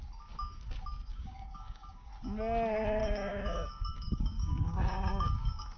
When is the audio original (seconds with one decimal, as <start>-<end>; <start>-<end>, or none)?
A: 0.0-1.1; 2.1-3.0